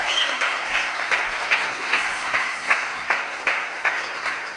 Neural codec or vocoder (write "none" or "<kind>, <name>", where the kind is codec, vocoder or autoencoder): codec, SNAC